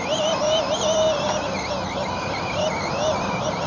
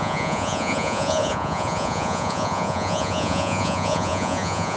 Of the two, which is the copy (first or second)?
second